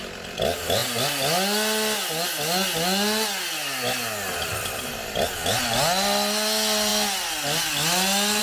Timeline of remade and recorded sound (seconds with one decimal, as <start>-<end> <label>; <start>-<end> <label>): 0.0-8.4 recorded